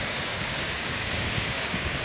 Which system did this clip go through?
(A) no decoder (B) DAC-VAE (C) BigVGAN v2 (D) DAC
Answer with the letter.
D